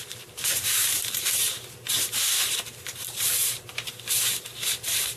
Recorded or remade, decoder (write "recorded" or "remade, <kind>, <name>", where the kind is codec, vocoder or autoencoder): remade, vocoder, BigVGAN v2